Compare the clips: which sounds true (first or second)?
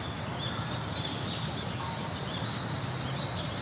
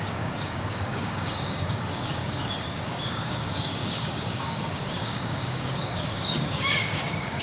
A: first